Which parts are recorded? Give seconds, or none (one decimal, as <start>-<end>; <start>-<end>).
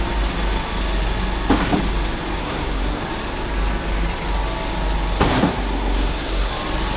0.0-2.4; 3.0-5.3; 6.5-7.0